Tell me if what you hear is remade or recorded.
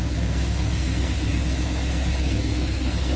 remade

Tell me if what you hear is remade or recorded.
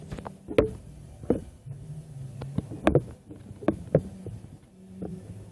recorded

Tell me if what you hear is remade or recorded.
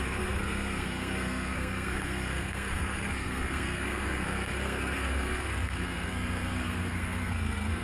remade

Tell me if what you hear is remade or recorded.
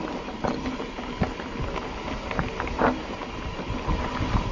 recorded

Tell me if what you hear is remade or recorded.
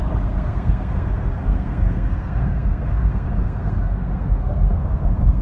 remade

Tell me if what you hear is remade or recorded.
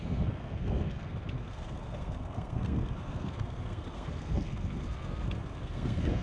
remade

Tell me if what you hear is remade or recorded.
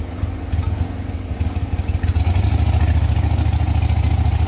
recorded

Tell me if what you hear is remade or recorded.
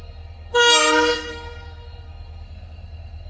remade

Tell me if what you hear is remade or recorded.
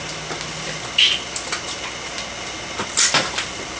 recorded